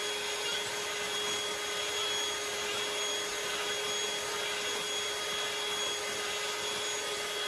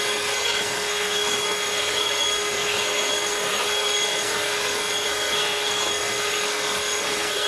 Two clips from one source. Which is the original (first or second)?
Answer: first